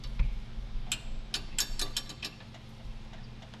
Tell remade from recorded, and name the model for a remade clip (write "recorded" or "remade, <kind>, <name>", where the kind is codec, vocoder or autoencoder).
recorded